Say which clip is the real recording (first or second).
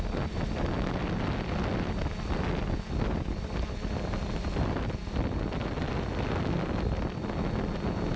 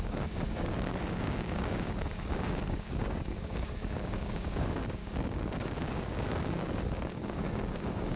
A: first